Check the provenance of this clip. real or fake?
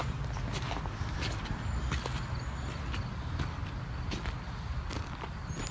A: real